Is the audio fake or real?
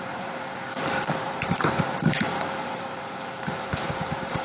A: fake